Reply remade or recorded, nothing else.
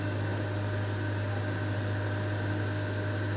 recorded